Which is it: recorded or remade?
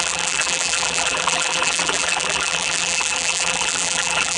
remade